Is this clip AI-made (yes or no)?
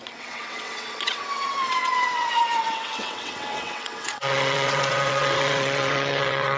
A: yes